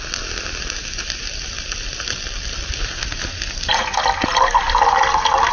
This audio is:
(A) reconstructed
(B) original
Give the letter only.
B